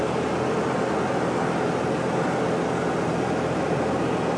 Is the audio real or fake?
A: real